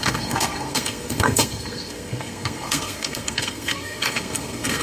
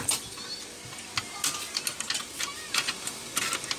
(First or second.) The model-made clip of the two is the first